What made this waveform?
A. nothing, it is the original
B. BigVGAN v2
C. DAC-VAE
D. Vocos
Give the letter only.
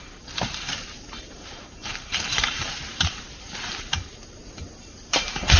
B